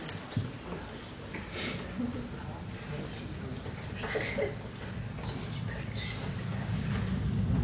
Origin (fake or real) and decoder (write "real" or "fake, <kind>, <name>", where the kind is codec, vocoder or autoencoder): real